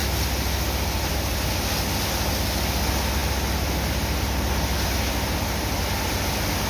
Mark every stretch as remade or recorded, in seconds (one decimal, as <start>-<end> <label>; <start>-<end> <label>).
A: 0.0-6.7 recorded